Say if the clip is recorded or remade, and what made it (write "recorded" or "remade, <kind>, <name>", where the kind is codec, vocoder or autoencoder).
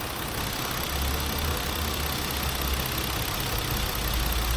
recorded